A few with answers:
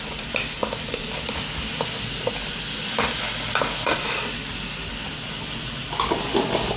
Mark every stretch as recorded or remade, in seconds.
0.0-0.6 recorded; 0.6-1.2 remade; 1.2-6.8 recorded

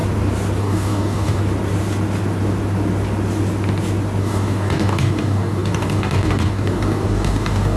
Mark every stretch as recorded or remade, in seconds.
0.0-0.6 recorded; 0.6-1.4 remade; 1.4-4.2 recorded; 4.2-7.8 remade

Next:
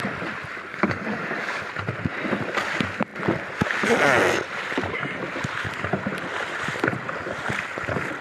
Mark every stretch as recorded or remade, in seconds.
0.0-0.7 recorded; 0.7-1.7 remade; 1.7-8.2 recorded

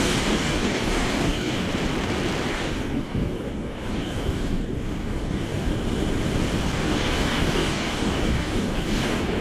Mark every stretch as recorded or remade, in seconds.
0.0-1.7 remade; 1.7-2.5 recorded; 2.5-5.7 remade; 5.7-6.6 recorded; 6.6-9.4 remade